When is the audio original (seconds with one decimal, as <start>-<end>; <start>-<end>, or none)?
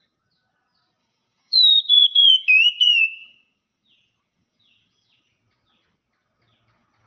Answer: 0.0-1.0; 5.2-7.1